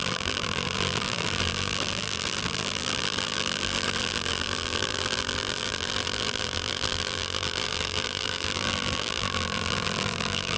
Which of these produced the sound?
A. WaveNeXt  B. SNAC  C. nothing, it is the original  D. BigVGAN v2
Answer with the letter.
D